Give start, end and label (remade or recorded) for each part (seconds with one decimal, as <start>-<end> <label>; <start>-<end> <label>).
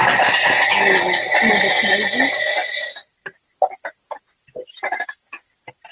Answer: 0.0-5.9 recorded